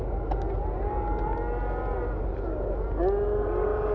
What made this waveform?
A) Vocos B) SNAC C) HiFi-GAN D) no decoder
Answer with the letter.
D